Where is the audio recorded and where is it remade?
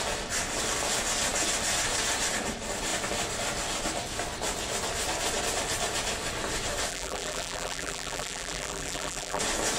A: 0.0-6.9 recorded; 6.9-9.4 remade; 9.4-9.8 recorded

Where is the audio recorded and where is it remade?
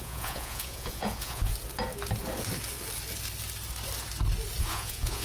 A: 0.0-1.5 remade; 1.5-4.6 recorded; 4.6-5.2 remade